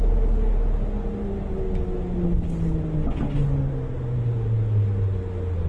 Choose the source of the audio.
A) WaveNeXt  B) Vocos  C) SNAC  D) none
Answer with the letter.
D